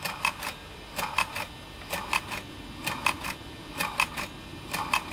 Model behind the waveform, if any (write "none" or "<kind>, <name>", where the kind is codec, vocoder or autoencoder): none